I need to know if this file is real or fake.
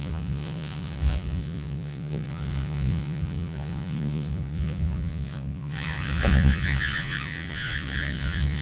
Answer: fake